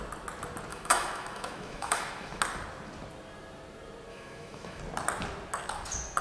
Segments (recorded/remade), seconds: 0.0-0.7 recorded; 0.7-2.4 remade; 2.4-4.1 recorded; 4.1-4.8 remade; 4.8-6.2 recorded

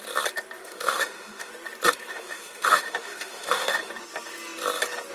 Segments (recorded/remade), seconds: 0.0-0.6 recorded; 0.6-1.5 remade; 1.5-2.1 recorded; 2.1-3.9 remade; 3.9-5.1 recorded